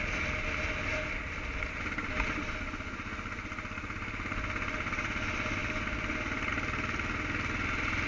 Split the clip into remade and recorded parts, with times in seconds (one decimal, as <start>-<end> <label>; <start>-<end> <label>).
0.0-8.1 recorded